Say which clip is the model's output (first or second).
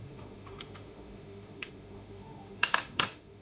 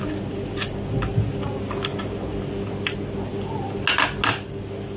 first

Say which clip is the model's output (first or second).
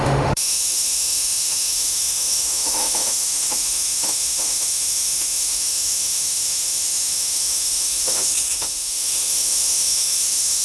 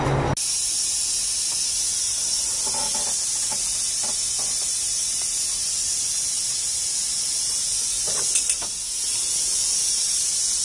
first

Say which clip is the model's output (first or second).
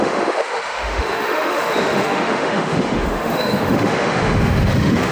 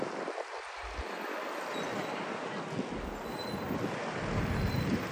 first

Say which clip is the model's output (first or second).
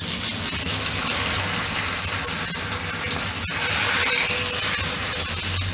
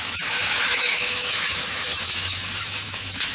second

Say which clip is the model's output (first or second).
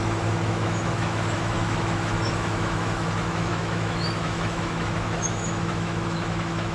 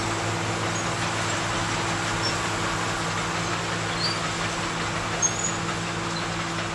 first